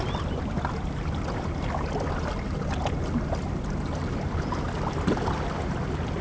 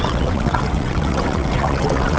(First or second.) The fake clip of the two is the second